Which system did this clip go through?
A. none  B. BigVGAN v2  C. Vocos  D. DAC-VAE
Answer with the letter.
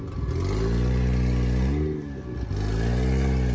A